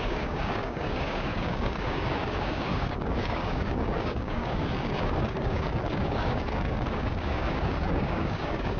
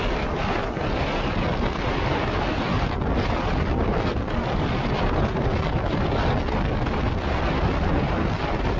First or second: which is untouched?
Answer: second